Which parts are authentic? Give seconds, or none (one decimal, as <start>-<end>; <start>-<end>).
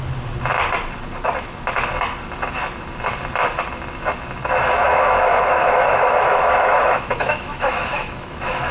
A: 0.0-4.8